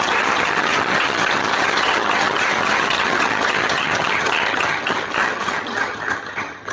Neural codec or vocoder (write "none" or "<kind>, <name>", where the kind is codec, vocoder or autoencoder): vocoder, HiFi-GAN